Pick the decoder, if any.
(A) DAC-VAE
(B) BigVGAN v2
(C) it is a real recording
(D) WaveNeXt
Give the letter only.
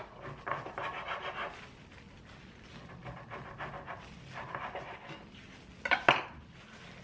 C